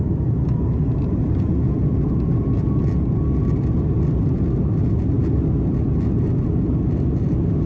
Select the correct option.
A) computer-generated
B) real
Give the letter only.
B